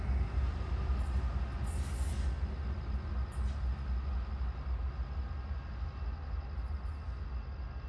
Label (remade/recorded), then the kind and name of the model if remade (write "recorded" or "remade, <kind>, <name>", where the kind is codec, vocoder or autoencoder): recorded